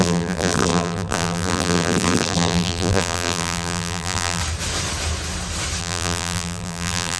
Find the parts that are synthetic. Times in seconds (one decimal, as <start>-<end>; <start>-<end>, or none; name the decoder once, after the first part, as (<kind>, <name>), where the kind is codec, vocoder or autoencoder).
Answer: 0.0-4.4 (vocoder, BigVGAN v2); 5.8-7.2